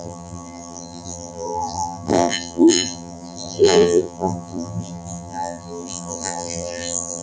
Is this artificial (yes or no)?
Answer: yes